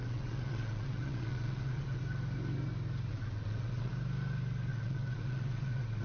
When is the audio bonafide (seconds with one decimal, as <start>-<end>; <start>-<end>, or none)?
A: 2.0-3.1; 3.9-4.7